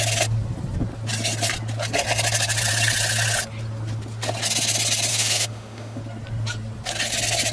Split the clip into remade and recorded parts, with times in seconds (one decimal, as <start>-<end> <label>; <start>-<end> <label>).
0.0-5.1 recorded; 5.1-6.0 remade; 6.0-7.5 recorded